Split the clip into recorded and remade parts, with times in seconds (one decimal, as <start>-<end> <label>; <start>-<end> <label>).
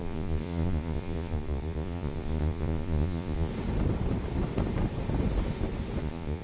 0.0-3.5 remade; 3.5-6.0 recorded; 6.0-6.4 remade